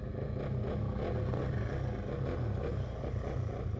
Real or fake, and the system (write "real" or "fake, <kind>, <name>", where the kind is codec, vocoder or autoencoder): real